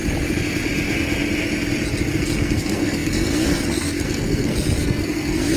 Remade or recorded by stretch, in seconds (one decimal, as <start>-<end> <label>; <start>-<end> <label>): 0.0-2.1 recorded; 2.1-5.6 remade